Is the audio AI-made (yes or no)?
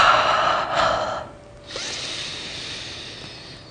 no